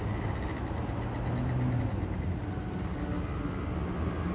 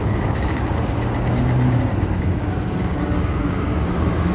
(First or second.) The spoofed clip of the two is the second